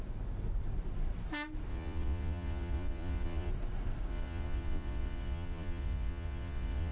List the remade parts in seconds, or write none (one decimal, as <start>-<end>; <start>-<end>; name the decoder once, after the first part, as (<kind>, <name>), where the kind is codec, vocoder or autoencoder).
1.7-3.5 (vocoder, Vocos); 4.1-6.9